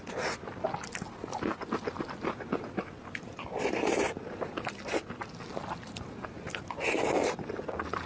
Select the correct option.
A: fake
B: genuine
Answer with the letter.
B